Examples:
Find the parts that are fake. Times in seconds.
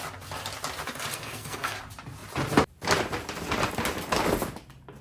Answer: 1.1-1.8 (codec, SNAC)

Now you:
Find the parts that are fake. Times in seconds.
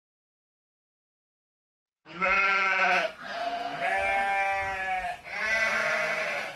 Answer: 1.6-2.8 (vocoder, Vocos); 3.3-3.9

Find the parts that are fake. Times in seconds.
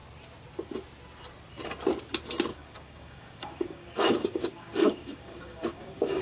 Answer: 2.5-6.2 (codec, DAC)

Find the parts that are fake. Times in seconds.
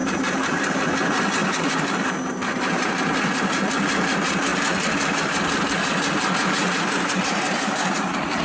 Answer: 0.0-0.7 (vocoder, BigVGAN v2); 1.4-2.9; 6.6-8.4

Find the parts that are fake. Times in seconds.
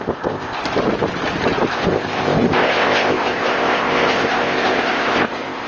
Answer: 0.0-0.6 (codec, ZipCodec); 1.7-5.7